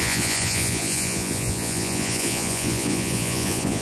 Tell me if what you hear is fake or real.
fake